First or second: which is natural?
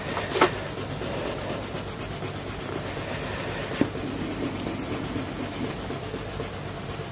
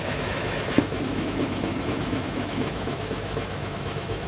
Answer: first